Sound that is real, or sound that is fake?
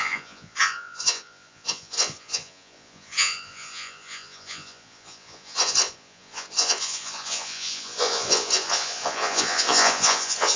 fake